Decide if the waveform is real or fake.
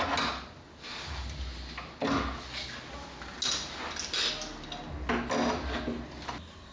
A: real